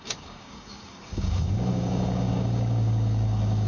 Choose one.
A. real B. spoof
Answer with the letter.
B